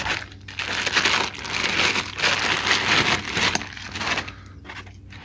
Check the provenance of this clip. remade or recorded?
recorded